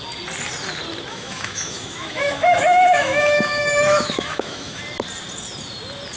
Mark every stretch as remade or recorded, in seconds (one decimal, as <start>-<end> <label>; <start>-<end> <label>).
0.0-1.1 recorded; 1.1-4.8 remade; 4.8-6.2 recorded

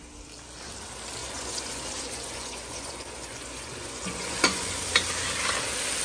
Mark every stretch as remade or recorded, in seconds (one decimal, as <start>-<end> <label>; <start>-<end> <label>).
0.0-1.2 recorded; 1.2-4.8 remade; 4.8-6.0 recorded